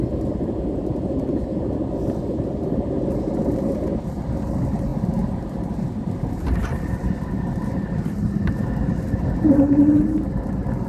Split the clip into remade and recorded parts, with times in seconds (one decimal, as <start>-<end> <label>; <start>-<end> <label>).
0.0-10.9 recorded

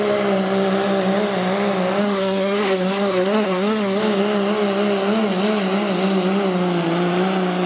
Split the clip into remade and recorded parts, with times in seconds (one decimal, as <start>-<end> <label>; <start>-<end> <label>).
0.0-2.0 recorded; 2.0-4.0 remade; 4.0-7.7 recorded

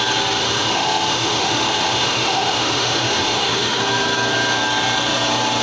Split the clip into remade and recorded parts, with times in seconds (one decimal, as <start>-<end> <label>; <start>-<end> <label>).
0.0-0.4 recorded; 0.4-3.8 remade; 3.8-5.6 recorded